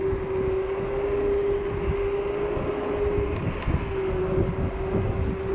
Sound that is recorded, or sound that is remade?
recorded